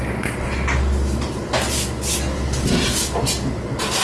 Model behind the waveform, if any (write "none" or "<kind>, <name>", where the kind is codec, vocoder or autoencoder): none